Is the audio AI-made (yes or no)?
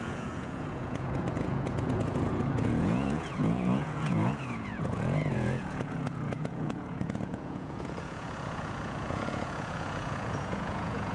yes